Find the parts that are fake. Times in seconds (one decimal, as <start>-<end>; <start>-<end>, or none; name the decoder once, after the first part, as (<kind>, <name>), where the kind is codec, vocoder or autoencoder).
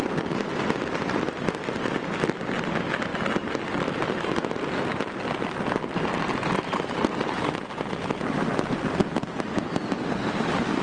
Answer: none